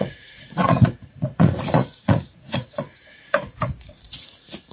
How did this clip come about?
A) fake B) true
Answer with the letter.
A